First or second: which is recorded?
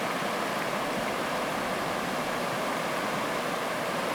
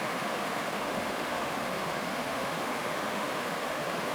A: first